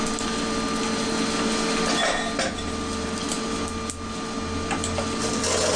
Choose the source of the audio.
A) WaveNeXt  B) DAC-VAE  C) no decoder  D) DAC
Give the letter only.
C